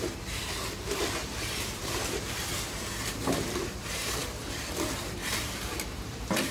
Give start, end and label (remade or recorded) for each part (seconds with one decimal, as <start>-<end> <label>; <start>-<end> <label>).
0.0-6.5 remade